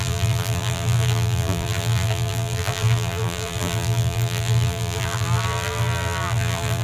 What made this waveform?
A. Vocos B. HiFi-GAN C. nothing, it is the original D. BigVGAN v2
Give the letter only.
D